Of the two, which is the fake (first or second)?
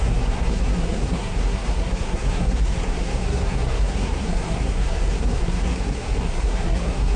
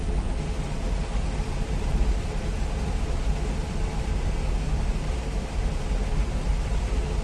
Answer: first